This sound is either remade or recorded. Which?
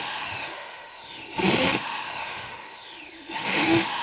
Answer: remade